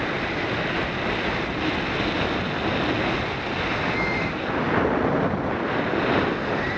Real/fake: real